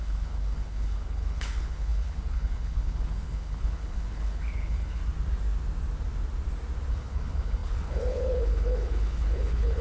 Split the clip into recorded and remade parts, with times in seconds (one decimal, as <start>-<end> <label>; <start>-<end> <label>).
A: 0.0-5.0 remade; 5.0-6.9 recorded; 6.9-9.8 remade